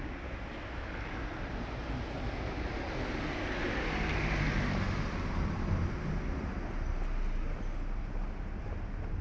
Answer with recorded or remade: recorded